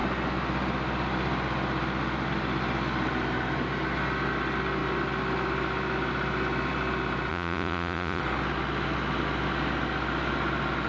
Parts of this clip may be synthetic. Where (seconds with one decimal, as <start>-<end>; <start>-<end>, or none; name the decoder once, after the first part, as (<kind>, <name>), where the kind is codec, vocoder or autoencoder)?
7.3-8.2 (vocoder, Vocos)